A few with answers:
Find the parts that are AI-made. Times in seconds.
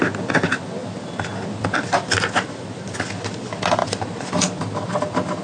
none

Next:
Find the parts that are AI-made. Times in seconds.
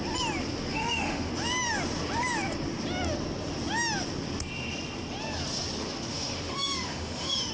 0.7-1.3 (autoencoder, DAC-VAE); 6.1-7.5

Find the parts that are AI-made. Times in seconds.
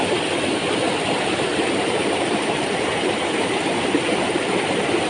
1.5-4.6 (vocoder, BigVGAN v2)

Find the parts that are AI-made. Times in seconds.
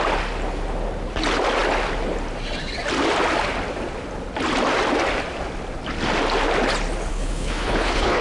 7.1-8.2 (codec, HILCodec)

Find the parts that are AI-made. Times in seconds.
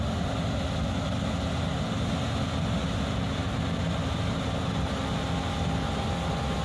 none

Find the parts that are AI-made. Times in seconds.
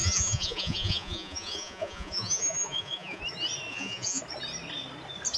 0.0-3.2 (vocoder, Vocos); 3.7-4.2